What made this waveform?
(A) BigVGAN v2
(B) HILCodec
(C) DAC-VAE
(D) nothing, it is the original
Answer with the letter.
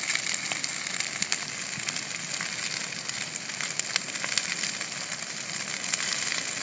D